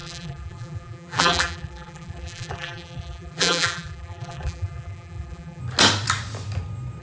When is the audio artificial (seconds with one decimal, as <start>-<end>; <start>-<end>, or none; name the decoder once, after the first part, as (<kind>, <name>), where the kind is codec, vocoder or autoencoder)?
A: 0.0-5.6 (vocoder, BigVGAN v2)